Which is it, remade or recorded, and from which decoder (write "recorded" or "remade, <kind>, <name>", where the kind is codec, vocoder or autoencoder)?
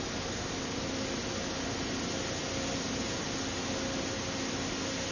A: recorded